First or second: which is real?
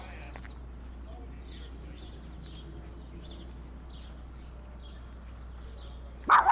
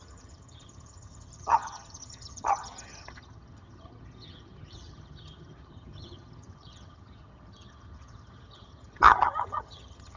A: first